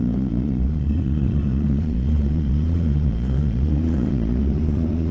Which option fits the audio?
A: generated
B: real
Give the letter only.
A